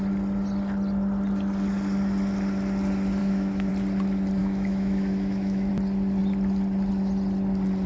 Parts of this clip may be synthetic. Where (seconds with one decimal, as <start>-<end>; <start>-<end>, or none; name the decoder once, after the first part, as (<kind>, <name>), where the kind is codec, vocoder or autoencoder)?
3.2-3.7 (autoencoder, DAC-VAE); 4.4-5.7